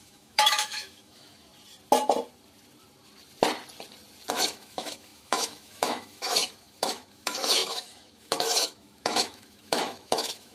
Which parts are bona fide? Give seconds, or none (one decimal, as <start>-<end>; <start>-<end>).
1.5-4.3